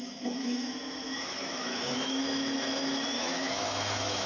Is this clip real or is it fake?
fake